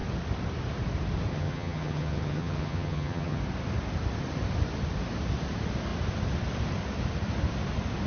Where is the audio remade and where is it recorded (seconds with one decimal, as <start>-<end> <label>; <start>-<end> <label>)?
0.0-1.3 recorded; 1.3-3.4 remade; 3.4-8.1 recorded